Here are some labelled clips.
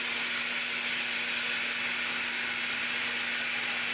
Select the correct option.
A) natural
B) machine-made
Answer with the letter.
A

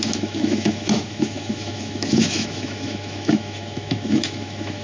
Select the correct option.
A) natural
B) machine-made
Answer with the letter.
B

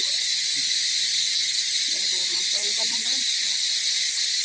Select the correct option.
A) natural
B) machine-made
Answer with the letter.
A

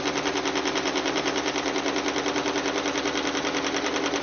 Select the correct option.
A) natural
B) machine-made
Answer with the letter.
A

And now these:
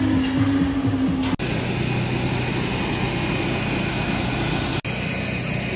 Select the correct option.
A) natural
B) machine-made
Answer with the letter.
A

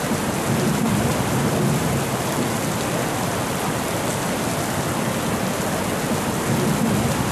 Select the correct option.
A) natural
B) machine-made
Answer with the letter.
A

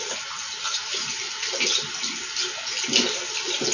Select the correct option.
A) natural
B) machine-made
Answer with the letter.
A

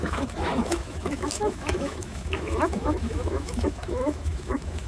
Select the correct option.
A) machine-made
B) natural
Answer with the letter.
A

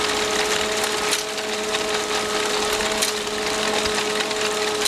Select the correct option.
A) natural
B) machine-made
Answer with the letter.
A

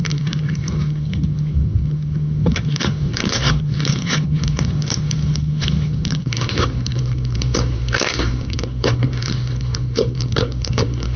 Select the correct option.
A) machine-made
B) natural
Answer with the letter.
A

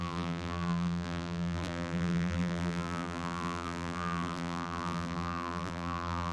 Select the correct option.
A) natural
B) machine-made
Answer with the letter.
B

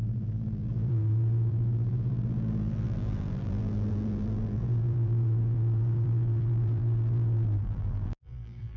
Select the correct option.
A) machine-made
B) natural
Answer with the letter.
A